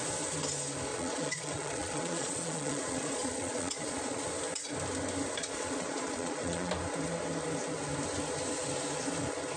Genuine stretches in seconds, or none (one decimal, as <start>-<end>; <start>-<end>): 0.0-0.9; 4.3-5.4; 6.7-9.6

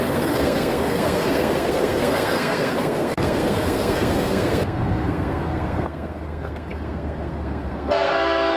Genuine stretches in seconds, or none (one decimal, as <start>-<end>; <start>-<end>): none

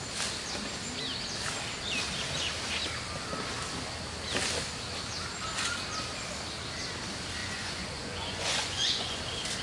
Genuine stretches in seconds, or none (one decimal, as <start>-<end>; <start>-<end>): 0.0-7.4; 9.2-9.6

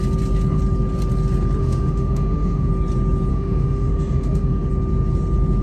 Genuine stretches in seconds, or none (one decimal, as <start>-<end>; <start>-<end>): 0.0-1.6; 2.7-3.3; 4.7-5.6